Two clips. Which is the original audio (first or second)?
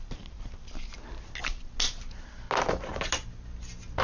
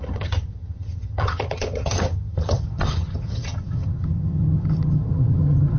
first